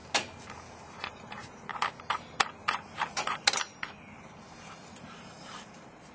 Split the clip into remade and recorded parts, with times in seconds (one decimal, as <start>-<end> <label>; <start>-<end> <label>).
0.0-0.8 recorded; 0.8-1.7 remade; 1.7-5.4 recorded; 5.4-6.1 remade